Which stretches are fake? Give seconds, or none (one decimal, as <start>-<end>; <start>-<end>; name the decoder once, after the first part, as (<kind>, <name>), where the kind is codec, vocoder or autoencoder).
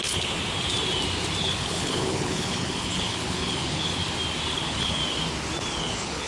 0.0-0.4 (codec, HILCodec); 1.4-4.0; 4.5-5.0; 5.8-6.3